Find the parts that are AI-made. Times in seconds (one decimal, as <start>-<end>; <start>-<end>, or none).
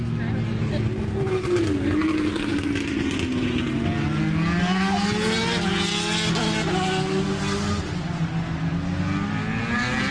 none